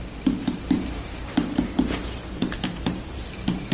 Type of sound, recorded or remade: remade